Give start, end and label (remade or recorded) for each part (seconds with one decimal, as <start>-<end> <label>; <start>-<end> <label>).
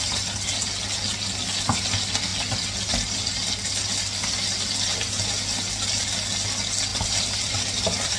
0.0-6.9 recorded; 6.9-8.2 remade